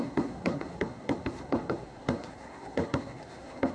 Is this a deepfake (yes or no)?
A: yes